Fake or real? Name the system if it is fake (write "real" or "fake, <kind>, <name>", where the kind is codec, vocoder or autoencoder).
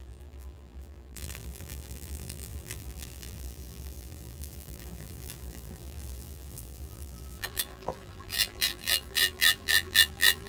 fake, vocoder, BigVGAN v2